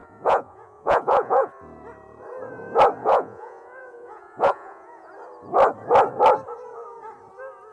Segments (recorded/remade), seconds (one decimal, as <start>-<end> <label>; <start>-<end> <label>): 0.0-1.5 remade; 1.5-3.0 recorded; 3.0-5.1 remade; 5.1-7.7 recorded